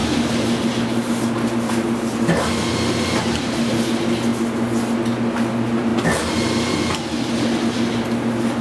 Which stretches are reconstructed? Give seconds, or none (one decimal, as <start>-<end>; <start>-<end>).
none